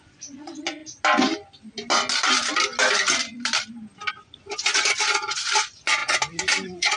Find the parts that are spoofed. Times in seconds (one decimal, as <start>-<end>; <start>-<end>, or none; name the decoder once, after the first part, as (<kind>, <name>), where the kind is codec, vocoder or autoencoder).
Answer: 0.0-0.8 (vocoder, Vocos); 4.1-7.0